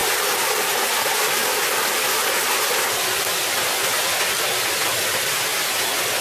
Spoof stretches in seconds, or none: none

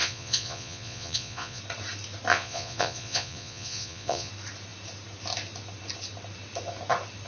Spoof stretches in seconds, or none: 0.0-1.6; 2.3-4.3